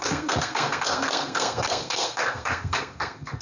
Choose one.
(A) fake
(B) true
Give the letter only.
A